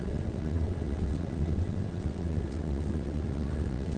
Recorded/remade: remade